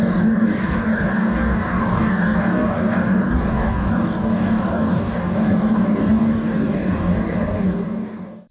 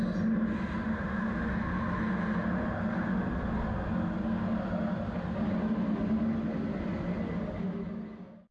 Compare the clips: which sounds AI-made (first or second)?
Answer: first